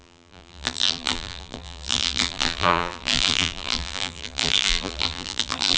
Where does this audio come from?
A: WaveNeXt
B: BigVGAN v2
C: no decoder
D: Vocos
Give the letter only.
B